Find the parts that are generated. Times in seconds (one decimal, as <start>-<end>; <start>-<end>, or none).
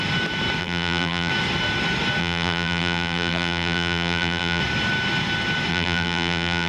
0.6-1.3; 2.2-4.6; 5.7-6.7